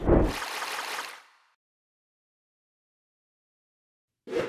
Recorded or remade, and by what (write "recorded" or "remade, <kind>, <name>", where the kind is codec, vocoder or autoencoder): recorded